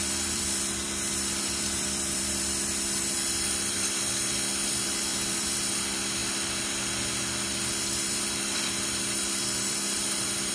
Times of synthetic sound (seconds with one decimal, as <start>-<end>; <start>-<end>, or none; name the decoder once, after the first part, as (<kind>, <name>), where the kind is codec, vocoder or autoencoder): 0.0-6.2 (vocoder, BigVGAN v2); 8.0-10.5